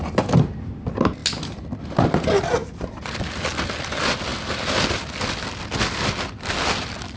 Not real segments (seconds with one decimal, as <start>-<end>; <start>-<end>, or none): none